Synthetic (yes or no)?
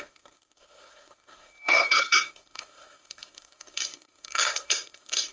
yes